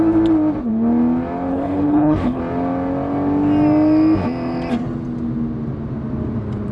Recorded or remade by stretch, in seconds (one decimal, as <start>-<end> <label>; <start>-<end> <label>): 0.0-1.5 recorded; 1.5-2.4 remade; 2.4-6.7 recorded